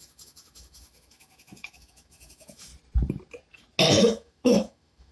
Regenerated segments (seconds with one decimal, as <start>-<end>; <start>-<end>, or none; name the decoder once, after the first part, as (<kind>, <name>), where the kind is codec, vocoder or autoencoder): 0.0-2.7 (autoencoder, DAC-VAE); 4.0-5.1